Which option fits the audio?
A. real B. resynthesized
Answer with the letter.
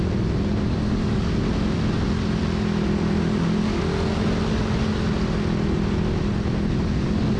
A